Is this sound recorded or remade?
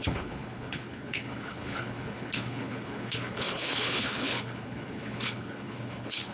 remade